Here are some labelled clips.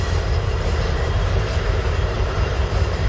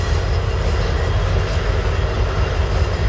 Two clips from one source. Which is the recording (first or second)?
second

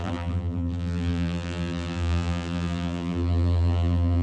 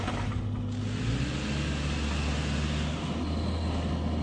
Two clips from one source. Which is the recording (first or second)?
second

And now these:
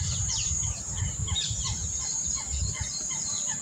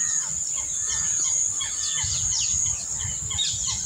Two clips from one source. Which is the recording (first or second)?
second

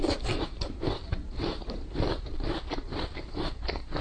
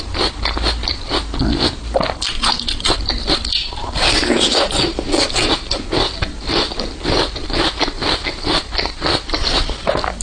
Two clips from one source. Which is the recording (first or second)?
second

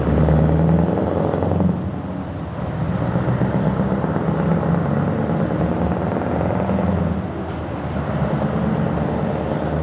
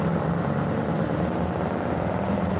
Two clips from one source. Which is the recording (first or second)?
first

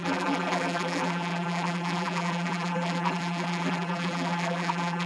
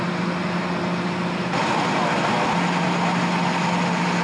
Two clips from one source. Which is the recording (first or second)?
second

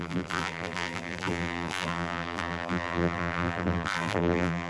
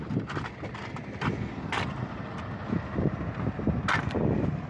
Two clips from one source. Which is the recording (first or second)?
second